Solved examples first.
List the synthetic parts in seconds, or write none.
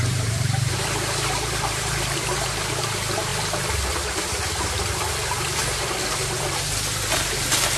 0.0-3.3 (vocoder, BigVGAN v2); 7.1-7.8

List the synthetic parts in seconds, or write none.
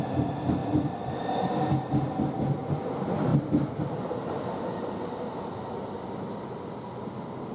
0.6-1.6 (vocoder, BigVGAN v2); 3.3-4.5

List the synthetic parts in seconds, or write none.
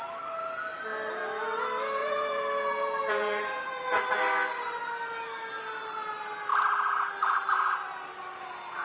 2.0-4.0 (vocoder, Vocos)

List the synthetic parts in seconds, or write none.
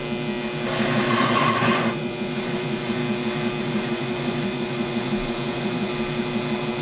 1.1-3.0 (vocoder, Vocos); 3.6-5.9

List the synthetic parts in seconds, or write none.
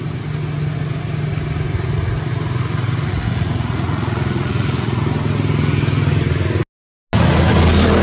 3.0-5.0 (vocoder, Vocos)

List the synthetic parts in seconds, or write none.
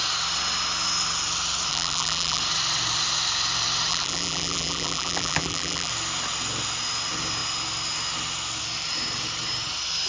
1.7-2.4 (vocoder, BigVGAN v2); 3.9-5.9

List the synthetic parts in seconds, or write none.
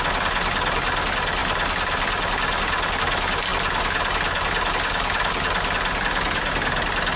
none